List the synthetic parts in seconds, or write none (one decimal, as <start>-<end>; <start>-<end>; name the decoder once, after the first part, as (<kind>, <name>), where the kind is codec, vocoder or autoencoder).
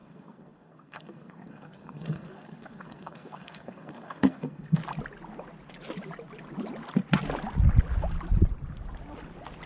0.0-4.8 (codec, SNAC)